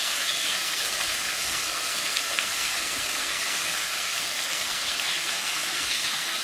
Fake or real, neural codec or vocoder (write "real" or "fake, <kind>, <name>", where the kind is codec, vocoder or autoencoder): fake, codec, SNAC